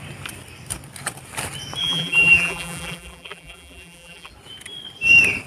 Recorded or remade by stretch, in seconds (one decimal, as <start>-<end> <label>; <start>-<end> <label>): 0.0-1.8 recorded; 1.8-4.3 remade; 4.3-5.5 recorded

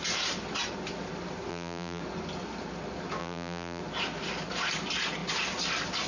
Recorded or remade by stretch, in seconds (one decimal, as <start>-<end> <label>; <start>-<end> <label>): 0.0-1.5 recorded; 1.5-2.0 remade; 2.0-3.2 recorded; 3.2-3.8 remade; 3.8-6.1 recorded

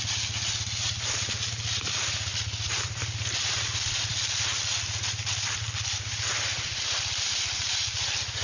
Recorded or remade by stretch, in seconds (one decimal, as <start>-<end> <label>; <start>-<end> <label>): 0.0-2.3 recorded; 2.3-7.1 remade; 7.1-8.4 recorded

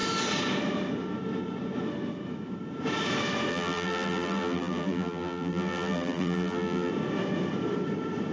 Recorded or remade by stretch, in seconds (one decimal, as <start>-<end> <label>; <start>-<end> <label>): 0.0-3.5 recorded; 3.5-6.9 remade; 6.9-8.3 recorded

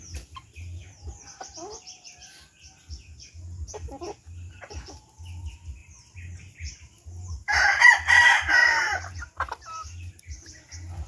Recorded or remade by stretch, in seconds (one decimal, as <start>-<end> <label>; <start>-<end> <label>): 0.0-5.8 recorded; 5.8-8.1 remade; 8.1-8.6 recorded; 8.6-10.2 remade; 10.2-11.1 recorded

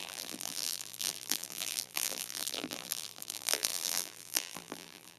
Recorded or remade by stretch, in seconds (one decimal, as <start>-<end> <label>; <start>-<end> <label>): 0.0-5.2 remade